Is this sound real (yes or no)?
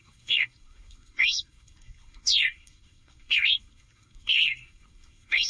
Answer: no